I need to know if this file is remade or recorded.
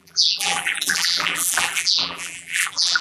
remade